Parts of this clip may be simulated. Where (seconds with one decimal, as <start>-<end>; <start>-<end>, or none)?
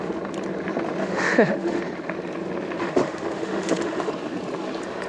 1.0-1.8; 2.8-4.1